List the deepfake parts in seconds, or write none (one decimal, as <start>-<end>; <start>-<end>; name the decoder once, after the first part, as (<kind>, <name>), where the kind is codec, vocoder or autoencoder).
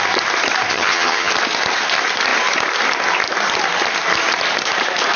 0.7-1.3 (vocoder, HiFi-GAN)